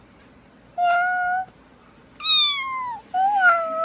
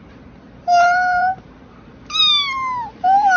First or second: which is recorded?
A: first